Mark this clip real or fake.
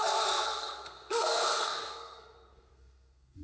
fake